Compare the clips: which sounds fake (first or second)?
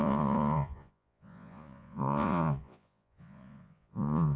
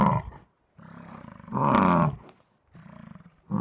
first